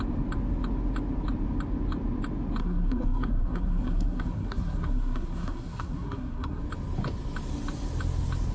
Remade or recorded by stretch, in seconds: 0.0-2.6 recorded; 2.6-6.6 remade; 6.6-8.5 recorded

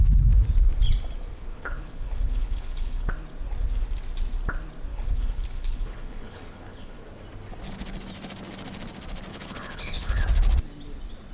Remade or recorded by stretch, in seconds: 0.0-1.5 recorded; 1.5-3.1 remade; 3.1-4.9 recorded; 4.9-7.0 remade; 7.0-9.3 recorded; 9.3-10.2 remade; 10.2-11.3 recorded

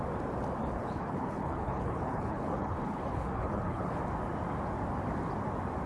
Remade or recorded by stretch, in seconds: 0.0-0.6 recorded; 0.6-4.0 remade; 4.0-5.9 recorded

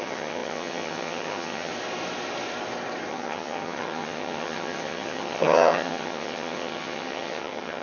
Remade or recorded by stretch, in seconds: 0.0-1.7 remade; 1.7-3.1 recorded; 3.1-7.8 remade

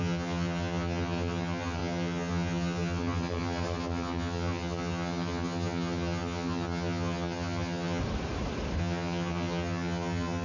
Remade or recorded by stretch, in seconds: 0.0-8.0 remade; 8.0-8.8 recorded; 8.8-10.4 remade

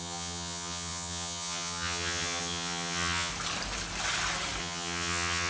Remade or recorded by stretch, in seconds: 0.0-3.3 remade; 3.3-4.6 recorded; 4.6-5.5 remade

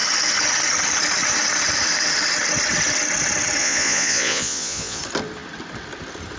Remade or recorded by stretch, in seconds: 0.0-3.6 recorded; 3.6-5.0 remade; 5.0-6.4 recorded

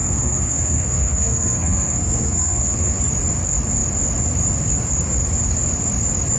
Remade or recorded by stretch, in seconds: 0.0-3.0 remade; 3.0-6.4 recorded